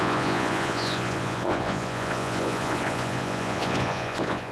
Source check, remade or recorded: remade